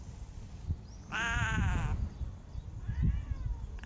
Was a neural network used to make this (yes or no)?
no